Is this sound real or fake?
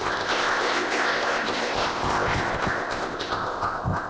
fake